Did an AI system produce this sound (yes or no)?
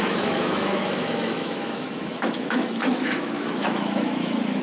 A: yes